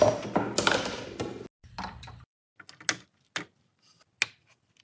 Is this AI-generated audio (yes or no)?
no